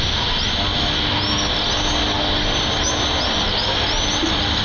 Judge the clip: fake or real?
real